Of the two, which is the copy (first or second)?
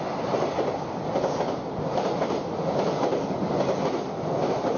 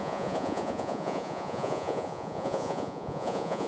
second